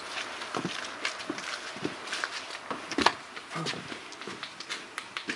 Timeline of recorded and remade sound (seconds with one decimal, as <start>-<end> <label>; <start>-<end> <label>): 0.0-3.1 recorded; 3.1-3.9 remade; 3.9-5.4 recorded